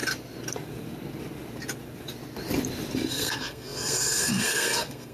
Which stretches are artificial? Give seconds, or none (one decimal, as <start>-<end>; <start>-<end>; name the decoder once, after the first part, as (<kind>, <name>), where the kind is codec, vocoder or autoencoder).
3.1-5.1 (codec, SNAC)